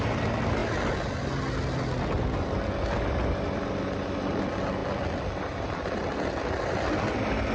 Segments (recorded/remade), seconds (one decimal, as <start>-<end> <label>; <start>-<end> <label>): 0.0-7.5 recorded